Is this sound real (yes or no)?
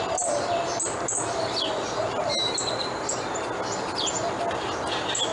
yes